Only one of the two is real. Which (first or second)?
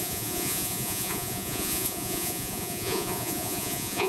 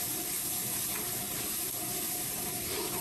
second